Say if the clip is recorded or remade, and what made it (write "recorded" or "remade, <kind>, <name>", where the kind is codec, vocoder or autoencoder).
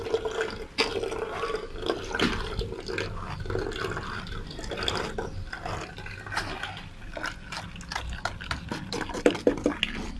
recorded